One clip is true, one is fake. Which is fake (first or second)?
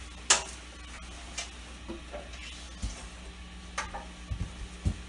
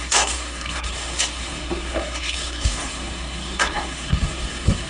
second